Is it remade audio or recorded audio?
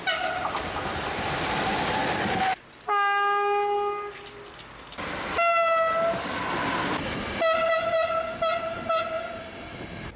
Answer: recorded